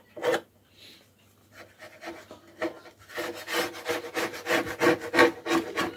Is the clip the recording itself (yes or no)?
yes